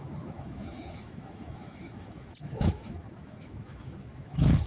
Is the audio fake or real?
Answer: fake